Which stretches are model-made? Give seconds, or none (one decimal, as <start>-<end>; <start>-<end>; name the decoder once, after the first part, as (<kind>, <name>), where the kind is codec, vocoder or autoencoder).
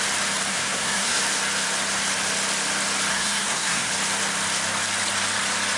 0.5-1.2 (codec, SNAC); 3.1-3.9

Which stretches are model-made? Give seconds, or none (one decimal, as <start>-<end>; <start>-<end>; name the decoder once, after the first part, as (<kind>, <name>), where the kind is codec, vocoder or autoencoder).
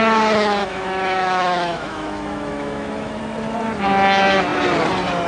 0.6-3.2 (autoencoder, DAC-VAE)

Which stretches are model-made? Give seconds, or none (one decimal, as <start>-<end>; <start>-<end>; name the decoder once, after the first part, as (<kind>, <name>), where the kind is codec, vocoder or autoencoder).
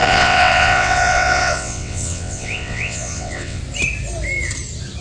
0.0-3.6 (vocoder, WaveNeXt)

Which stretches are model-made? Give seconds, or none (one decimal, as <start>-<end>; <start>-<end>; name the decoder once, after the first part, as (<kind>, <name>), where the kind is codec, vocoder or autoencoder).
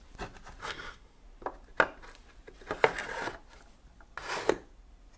0.6-1.2 (codec, SNAC)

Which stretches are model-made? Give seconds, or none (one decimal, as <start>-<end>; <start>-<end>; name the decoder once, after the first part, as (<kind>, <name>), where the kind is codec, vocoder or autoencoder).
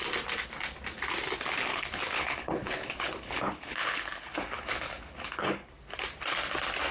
1.7-5.8 (codec, HILCodec)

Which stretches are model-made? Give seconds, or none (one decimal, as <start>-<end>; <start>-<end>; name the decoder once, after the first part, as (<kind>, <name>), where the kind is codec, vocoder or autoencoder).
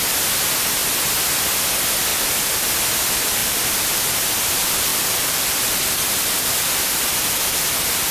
2.1-2.7 (vocoder, BigVGAN v2); 3.4-4.4; 4.9-8.1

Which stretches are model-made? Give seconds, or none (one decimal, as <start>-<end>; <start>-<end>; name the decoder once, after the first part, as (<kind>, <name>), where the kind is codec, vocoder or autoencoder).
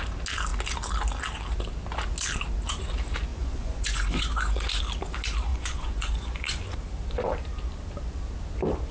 3.3-4.8 (vocoder, Vocos); 5.5-6.6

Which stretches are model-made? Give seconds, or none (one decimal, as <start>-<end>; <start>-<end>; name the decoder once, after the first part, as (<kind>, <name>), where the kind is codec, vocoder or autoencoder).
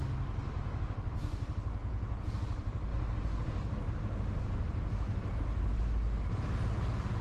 1.8-2.3 (vocoder, Vocos)